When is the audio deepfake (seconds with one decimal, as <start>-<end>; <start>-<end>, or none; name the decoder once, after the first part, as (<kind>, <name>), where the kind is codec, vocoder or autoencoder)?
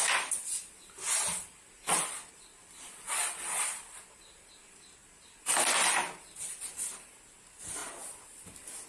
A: none